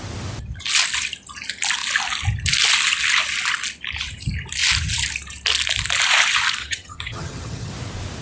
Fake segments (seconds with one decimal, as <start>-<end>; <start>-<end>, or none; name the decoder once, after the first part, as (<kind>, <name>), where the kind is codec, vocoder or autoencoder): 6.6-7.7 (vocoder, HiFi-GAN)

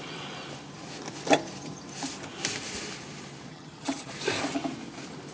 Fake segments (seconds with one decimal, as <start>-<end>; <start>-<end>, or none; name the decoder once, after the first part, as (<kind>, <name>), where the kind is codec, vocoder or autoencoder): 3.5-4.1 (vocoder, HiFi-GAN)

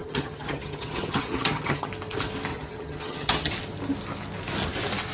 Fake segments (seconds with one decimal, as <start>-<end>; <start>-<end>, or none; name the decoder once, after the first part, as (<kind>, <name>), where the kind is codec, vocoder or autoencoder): 0.0-1.9 (vocoder, HiFi-GAN); 2.5-3.5

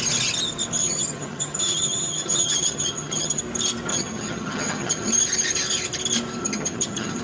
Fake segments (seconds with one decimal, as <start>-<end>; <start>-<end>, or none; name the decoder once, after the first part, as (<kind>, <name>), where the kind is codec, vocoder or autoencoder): 0.8-3.4 (vocoder, HiFi-GAN); 3.9-5.1; 6.4-7.2